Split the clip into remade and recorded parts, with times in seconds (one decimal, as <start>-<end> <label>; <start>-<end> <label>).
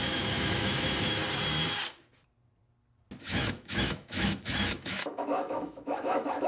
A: 0.0-1.2 remade; 1.2-3.2 recorded; 3.2-6.5 remade